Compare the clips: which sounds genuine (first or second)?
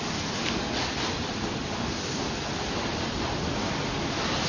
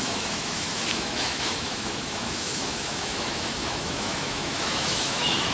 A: first